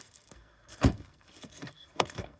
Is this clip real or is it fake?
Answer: fake